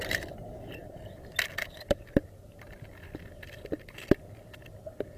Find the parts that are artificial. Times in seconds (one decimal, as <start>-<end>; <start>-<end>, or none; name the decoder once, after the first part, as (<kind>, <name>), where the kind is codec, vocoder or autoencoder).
none